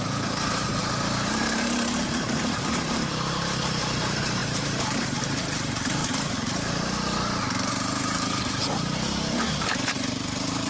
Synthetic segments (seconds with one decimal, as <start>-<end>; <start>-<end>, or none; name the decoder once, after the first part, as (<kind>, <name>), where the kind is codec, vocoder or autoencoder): 0.0-6.0 (vocoder, BigVGAN v2); 7.7-10.7